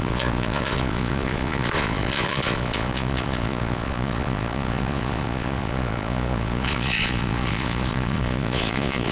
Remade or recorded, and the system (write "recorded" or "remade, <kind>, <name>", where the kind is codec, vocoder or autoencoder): remade, vocoder, Vocos